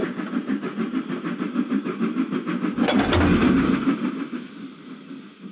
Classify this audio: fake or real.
real